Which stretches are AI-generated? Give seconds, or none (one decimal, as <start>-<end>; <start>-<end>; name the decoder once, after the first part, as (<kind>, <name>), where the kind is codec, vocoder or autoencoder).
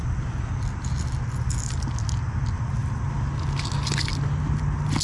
none